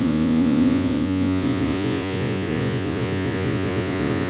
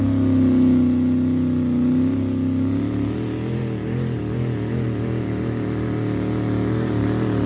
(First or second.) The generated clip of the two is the first